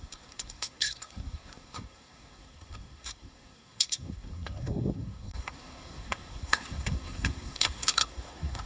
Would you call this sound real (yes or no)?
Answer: no